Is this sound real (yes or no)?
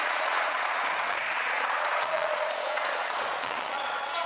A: no